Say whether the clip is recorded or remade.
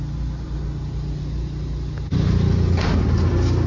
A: recorded